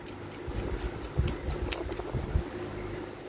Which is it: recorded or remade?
recorded